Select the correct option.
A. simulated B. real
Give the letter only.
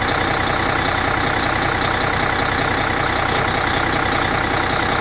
B